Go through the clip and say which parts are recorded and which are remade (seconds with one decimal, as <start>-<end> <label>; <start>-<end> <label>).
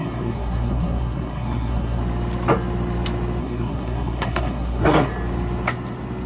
0.0-2.0 remade; 2.0-3.4 recorded; 3.4-5.1 remade; 5.1-6.3 recorded